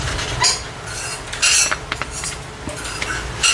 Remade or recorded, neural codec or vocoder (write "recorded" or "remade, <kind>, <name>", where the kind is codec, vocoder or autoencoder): recorded